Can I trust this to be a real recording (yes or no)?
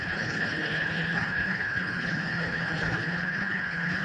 no